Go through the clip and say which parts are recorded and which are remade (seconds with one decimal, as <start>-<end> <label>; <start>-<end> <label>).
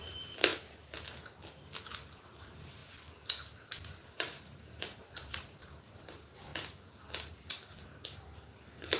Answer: 0.0-0.5 remade; 0.5-1.8 recorded; 1.8-2.8 remade; 2.8-3.8 recorded; 3.8-6.5 remade; 6.5-7.3 recorded; 7.3-9.0 remade